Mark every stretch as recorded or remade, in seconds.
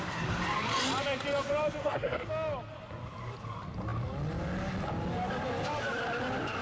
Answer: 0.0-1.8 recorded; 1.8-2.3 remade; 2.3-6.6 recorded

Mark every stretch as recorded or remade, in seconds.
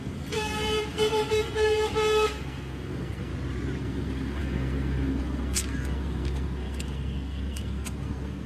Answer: 0.0-3.3 remade; 3.3-3.8 recorded; 3.8-8.5 remade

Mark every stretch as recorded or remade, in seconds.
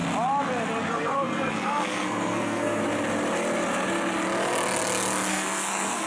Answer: 0.0-0.9 recorded; 0.9-2.8 remade; 2.8-5.3 recorded; 5.3-6.1 remade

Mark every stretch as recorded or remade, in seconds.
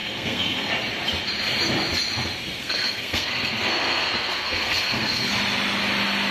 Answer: 0.0-0.7 remade; 0.7-2.6 recorded; 2.6-5.3 remade; 5.3-6.3 recorded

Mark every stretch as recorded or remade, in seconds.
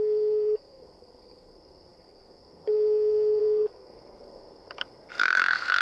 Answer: 0.0-5.8 remade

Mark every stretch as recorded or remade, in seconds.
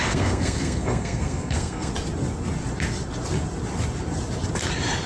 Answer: 0.0-1.9 remade; 1.9-5.1 recorded